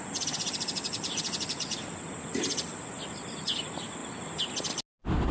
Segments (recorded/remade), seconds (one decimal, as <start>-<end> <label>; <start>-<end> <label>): 0.0-5.3 recorded